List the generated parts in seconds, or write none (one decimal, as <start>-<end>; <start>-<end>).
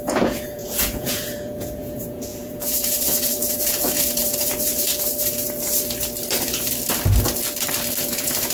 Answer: 0.0-4.9; 8.0-8.5